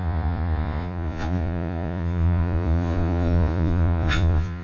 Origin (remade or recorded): remade